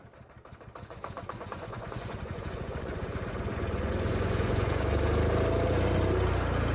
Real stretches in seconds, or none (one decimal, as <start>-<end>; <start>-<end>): 0.0-0.8; 4.8-6.7